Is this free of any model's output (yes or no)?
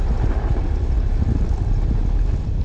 yes